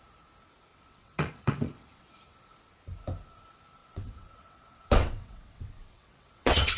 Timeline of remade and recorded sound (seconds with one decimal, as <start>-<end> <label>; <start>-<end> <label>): 0.0-0.7 recorded; 0.7-2.1 remade; 2.1-3.8 recorded; 3.8-6.8 remade